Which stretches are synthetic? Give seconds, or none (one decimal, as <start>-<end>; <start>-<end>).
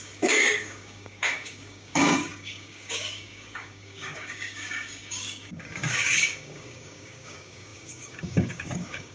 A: 0.0-9.1